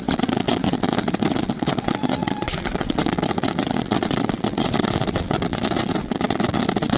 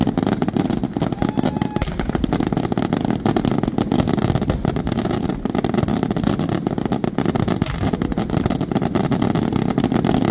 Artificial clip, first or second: first